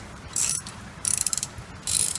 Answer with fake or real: fake